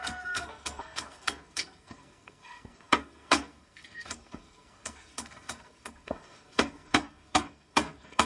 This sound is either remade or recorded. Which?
remade